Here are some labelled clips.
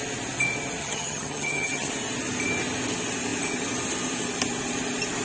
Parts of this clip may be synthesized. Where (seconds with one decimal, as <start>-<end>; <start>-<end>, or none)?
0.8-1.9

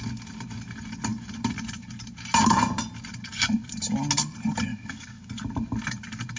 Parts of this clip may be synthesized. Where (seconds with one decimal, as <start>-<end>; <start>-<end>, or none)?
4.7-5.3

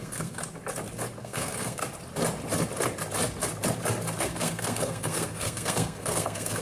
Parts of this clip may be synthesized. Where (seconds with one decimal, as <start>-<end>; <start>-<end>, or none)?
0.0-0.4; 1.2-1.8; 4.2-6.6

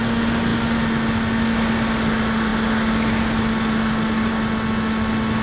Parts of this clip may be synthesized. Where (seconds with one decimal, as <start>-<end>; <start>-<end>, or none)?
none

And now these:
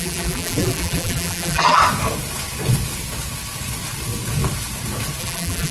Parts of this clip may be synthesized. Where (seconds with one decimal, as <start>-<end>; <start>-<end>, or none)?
0.0-1.8; 5.2-5.7

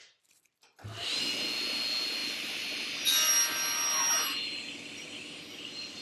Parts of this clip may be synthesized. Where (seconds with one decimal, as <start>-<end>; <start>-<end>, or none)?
none

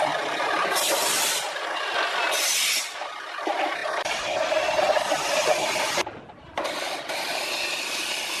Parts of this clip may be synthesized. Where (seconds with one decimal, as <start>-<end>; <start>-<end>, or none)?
0.0-3.8; 6.4-8.4